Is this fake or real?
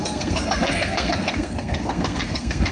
fake